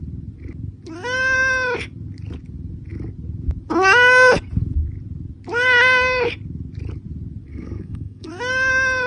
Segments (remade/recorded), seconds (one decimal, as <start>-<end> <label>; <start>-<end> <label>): 0.0-7.5 recorded; 7.5-8.3 remade; 8.3-9.1 recorded